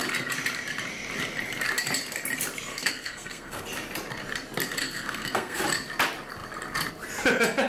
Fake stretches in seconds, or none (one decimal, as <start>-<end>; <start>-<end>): 2.7-3.6; 4.8-5.6

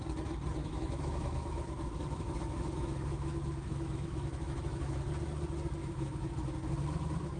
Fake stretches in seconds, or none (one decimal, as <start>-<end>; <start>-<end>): 0.6-5.0; 5.8-6.3

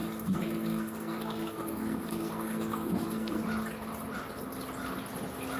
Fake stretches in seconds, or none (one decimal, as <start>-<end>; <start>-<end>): 0.0-3.4

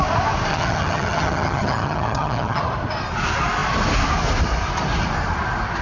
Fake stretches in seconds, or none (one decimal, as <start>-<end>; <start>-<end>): 0.5-2.6

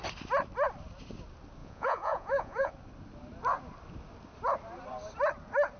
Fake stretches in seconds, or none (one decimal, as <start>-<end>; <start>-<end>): 1.6-2.7

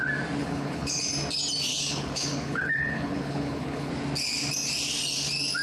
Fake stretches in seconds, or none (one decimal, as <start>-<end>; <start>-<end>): 0.4-1.0; 1.7-3.9

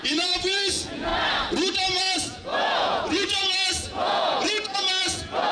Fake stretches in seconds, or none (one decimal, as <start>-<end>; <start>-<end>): 0.0-1.1; 2.0-5.5

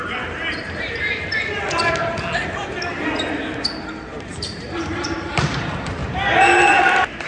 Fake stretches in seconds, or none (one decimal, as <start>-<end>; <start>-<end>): 0.0-1.4; 4.3-6.0; 6.8-7.3